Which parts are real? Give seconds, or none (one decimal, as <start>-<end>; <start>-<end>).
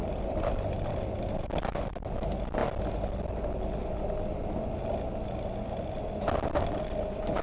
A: 1.4-7.4